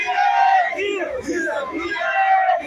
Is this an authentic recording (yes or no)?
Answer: no